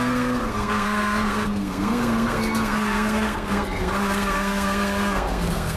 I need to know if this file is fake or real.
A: fake